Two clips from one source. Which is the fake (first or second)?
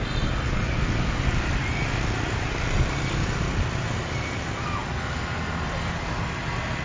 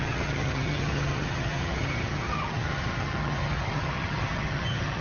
second